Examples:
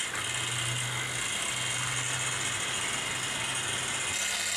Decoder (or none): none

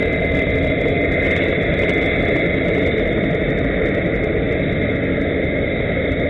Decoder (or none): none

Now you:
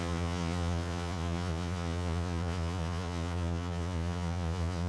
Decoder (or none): vocoder, Vocos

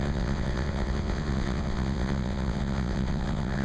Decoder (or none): vocoder, WaveNeXt